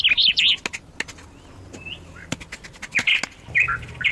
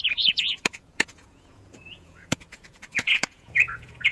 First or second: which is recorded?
first